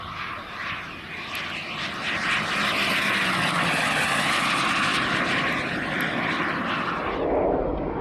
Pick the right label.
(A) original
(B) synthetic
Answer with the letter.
A